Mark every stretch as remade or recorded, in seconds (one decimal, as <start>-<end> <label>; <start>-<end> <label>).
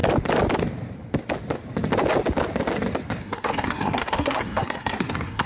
0.0-3.2 recorded; 3.2-5.5 remade